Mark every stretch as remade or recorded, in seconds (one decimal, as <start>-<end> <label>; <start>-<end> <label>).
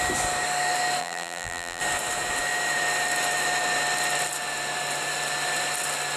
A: 0.0-1.0 recorded; 1.0-1.8 remade; 1.8-6.2 recorded